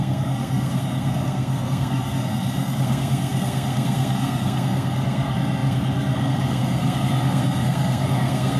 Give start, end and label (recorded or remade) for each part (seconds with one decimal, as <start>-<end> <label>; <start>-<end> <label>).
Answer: 0.0-8.6 remade